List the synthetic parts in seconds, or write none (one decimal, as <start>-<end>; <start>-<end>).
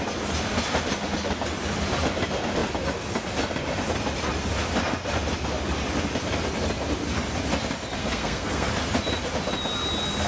8.0-8.7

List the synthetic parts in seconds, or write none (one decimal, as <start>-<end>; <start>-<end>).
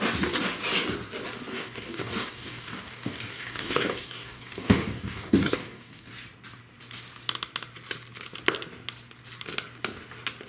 1.5-6.1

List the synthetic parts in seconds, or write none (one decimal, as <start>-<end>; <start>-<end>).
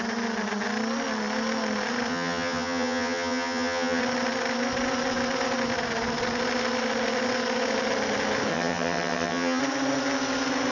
2.1-4.0; 8.5-9.6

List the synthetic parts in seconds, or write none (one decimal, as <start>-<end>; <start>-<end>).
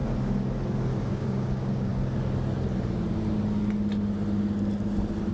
1.0-1.9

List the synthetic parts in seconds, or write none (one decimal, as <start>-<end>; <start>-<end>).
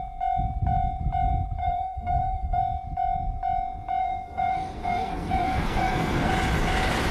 1.6-2.6; 4.0-6.3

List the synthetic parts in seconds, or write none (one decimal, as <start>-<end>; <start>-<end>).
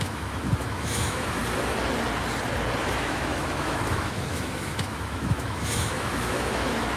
0.0-1.4; 2.8-7.0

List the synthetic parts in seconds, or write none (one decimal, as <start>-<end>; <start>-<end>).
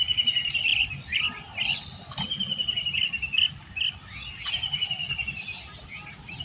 none